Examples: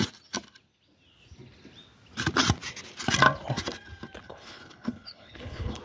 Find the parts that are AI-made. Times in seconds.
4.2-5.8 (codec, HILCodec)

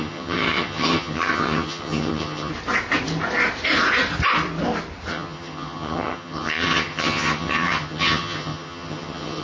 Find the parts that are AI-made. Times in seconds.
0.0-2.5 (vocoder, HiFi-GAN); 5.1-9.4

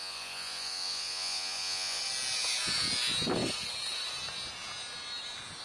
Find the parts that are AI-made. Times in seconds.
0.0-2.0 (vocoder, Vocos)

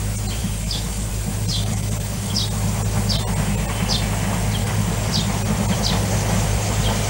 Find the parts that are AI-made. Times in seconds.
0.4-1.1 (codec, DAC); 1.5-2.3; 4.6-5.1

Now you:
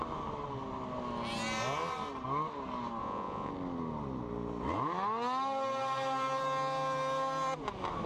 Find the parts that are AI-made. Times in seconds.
3.0-3.5 (vocoder, Vocos)

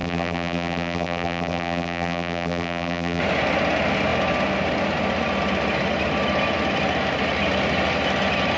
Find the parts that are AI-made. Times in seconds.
0.0-3.2 (vocoder, BigVGAN v2)

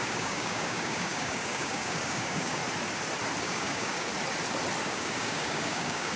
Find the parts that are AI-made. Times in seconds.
0.0-2.6 (codec, DAC); 3.4-4.1; 4.8-6.2